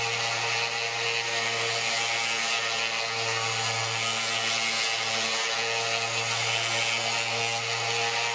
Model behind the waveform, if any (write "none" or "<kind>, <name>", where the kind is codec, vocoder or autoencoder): none